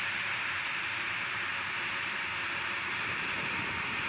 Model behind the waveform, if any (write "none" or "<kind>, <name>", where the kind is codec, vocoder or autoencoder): vocoder, BigVGAN v2